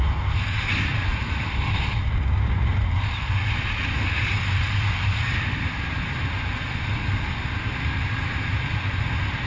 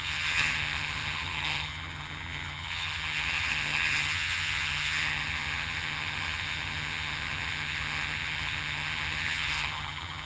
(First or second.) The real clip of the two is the first